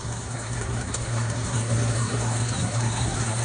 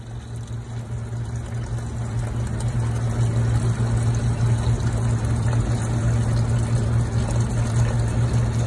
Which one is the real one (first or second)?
second